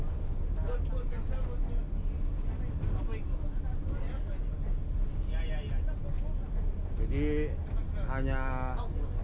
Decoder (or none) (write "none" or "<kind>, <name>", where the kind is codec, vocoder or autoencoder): none